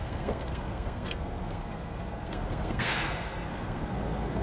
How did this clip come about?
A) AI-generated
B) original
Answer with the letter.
A